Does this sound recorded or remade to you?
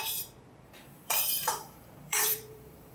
remade